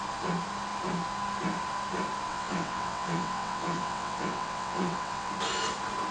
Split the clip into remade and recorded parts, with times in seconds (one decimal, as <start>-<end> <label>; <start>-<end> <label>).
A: 0.0-2.3 recorded; 2.3-5.3 remade; 5.3-6.1 recorded